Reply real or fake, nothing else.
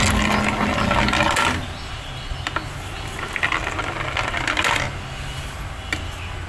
real